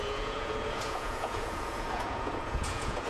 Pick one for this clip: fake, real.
fake